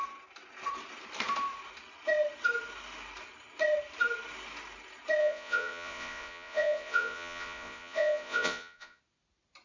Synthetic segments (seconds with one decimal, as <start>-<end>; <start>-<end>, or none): 5.2-9.0